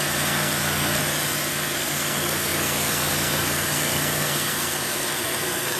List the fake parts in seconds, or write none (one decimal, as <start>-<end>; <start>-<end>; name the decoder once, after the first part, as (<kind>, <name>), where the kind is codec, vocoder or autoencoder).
0.0-1.0 (codec, SNAC); 1.5-5.8